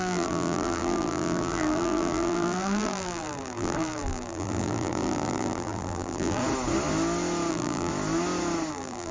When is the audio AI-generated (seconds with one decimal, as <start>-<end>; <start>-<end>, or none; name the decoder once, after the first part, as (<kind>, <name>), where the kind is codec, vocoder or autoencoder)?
0.0-6.4 (vocoder, BigVGAN v2); 7.5-7.9; 8.7-9.1